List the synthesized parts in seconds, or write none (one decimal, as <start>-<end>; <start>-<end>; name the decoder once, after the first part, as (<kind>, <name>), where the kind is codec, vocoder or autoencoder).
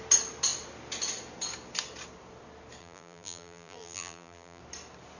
2.8-4.6 (vocoder, BigVGAN v2)